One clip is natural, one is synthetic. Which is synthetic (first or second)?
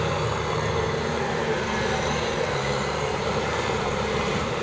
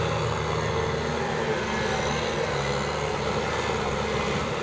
first